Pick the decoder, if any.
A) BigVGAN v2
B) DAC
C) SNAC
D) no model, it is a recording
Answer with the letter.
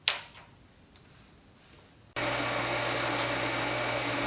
D